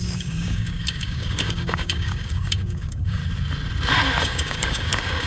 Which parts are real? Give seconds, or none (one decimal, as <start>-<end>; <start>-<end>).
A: 3.2-4.2

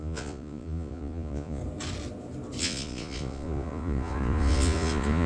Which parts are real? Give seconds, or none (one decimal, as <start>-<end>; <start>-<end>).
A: 1.6-2.6

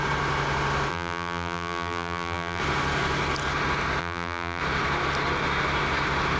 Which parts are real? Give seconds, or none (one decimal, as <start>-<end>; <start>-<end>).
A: 0.0-0.9; 2.6-4.0; 4.6-6.4

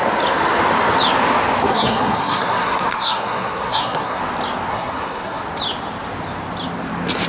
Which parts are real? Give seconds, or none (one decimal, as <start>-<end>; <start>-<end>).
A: 0.0-1.7; 4.2-4.7; 5.4-7.3

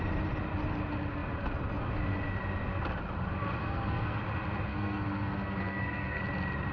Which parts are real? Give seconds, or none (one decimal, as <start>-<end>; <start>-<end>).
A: 0.0-3.6; 4.2-4.7; 6.2-6.7

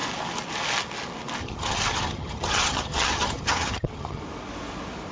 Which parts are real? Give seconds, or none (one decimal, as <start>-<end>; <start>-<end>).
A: 0.0-1.4; 4.2-5.1

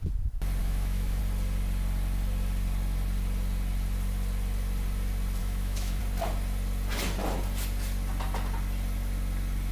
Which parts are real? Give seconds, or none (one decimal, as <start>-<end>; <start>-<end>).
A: 0.0-0.6; 1.2-5.4; 6.0-9.7